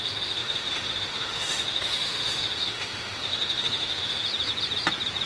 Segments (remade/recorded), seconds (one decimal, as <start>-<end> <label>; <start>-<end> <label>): 0.0-4.2 remade; 4.2-5.3 recorded